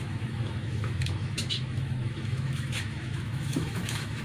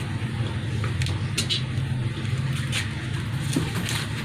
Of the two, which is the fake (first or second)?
first